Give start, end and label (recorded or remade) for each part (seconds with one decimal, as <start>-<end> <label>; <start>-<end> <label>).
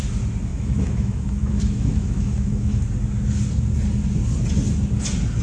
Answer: 0.0-0.5 recorded; 0.5-2.8 remade; 2.8-5.4 recorded